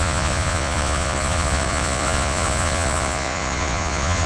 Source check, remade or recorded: remade